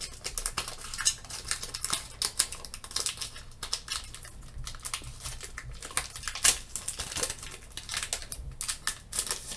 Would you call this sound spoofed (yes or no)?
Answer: no